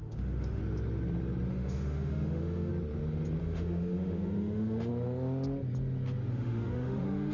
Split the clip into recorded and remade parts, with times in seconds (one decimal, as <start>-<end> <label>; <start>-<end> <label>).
0.0-0.6 remade; 0.6-1.5 recorded; 1.5-2.7 remade; 2.7-3.4 recorded; 3.4-4.9 remade; 4.9-6.3 recorded; 6.3-7.3 remade